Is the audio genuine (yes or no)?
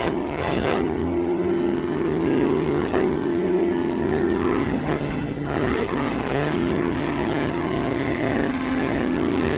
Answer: no